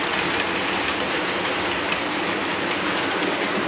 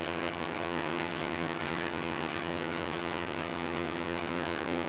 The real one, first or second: first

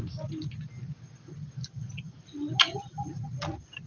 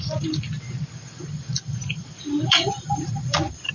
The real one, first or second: first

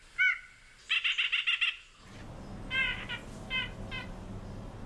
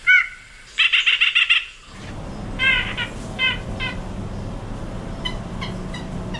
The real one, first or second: first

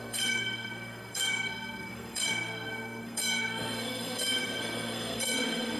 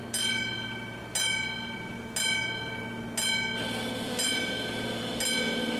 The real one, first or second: second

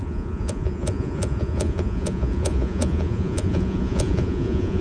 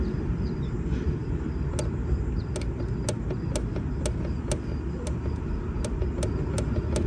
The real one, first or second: second